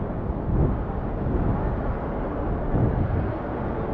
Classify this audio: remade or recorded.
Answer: recorded